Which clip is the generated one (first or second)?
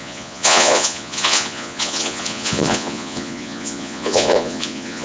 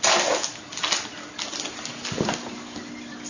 first